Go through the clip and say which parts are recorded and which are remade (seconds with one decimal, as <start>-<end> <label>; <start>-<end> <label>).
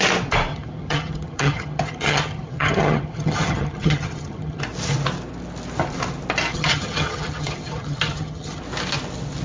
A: 0.0-0.5 recorded; 0.5-4.6 remade; 4.6-6.5 recorded; 6.5-8.6 remade; 8.6-9.4 recorded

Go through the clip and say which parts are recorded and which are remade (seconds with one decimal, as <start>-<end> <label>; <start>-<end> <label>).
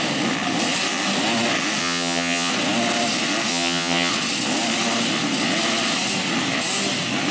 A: 0.0-1.8 recorded; 1.8-2.5 remade; 2.5-3.5 recorded; 3.5-4.1 remade; 4.1-7.3 recorded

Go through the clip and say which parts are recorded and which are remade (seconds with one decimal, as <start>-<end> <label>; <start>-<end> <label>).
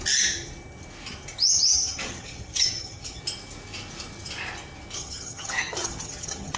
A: 0.0-1.7 recorded; 1.7-3.2 remade; 3.2-5.0 recorded; 5.0-6.6 remade